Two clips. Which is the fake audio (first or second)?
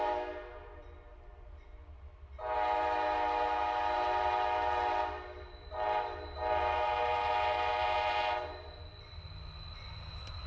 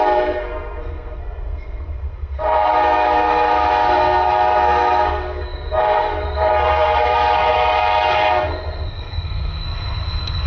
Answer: second